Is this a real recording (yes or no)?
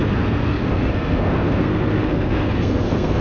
no